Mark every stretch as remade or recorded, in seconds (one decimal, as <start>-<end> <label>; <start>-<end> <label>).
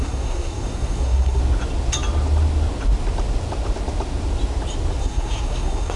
0.0-1.4 remade; 1.4-5.0 recorded; 5.0-6.0 remade